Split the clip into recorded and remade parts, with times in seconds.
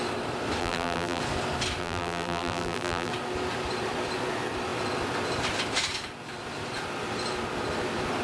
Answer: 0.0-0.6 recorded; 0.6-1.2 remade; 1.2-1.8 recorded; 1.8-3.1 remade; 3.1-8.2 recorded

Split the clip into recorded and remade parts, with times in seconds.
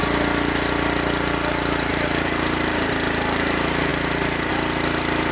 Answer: 0.0-1.9 recorded; 1.9-2.9 remade; 2.9-5.3 recorded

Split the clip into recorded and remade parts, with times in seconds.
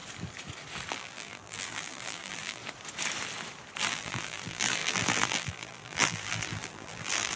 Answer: 0.0-0.9 recorded; 0.9-2.6 remade; 2.6-3.8 recorded; 3.8-7.4 remade